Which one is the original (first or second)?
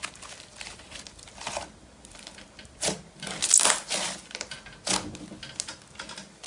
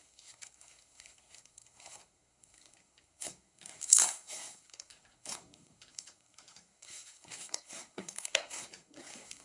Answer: first